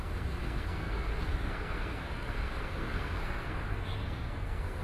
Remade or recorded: remade